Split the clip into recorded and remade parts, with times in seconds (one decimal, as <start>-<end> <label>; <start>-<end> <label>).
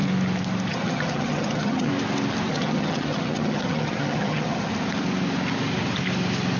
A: 0.0-0.7 recorded; 0.7-1.9 remade; 1.9-2.5 recorded; 2.5-4.7 remade; 4.7-6.6 recorded